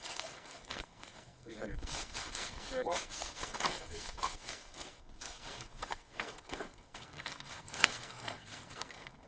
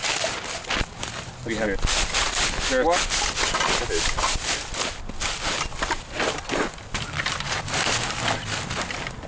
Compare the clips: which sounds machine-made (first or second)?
first